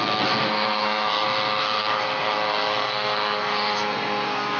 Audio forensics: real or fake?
fake